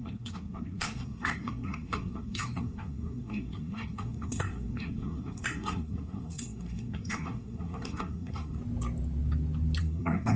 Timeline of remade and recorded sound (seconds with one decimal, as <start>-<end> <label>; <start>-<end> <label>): 0.0-8.6 remade; 8.6-9.8 recorded; 9.8-10.4 remade